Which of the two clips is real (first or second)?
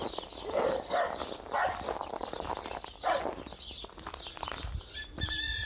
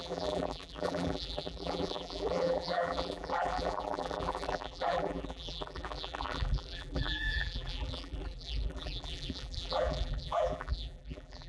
first